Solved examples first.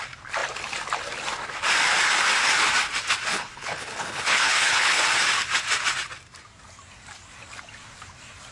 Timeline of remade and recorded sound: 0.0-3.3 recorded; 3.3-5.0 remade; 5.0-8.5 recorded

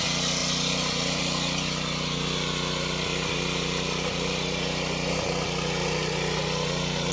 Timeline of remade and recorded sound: 0.0-7.1 recorded

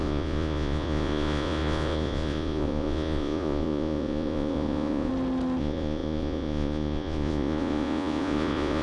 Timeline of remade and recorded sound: 0.0-5.1 remade; 5.1-5.6 recorded; 5.6-8.8 remade

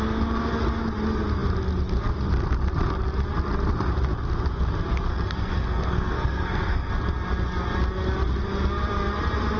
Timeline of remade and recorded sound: 0.0-5.1 recorded; 5.1-6.9 remade; 6.9-9.6 recorded

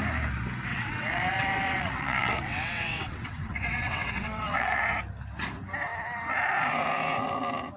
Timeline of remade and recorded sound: 0.0-0.7 recorded; 0.7-4.8 remade; 4.8-7.8 recorded

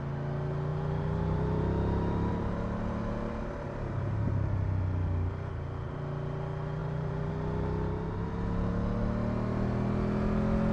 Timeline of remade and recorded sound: 0.0-0.7 recorded; 0.7-4.3 remade; 4.3-6.8 recorded; 6.8-7.3 remade; 7.3-10.7 recorded